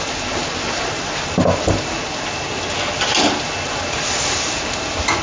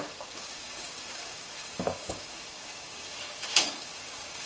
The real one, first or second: first